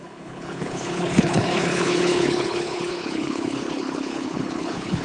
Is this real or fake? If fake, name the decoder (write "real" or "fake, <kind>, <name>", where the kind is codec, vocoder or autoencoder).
fake, codec, HILCodec